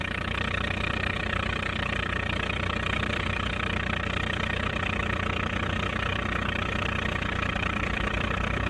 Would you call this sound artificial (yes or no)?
no